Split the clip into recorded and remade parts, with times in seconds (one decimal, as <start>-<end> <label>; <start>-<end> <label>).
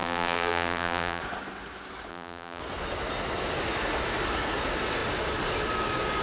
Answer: 0.0-1.2 remade; 1.2-2.1 recorded; 2.1-2.6 remade; 2.6-6.2 recorded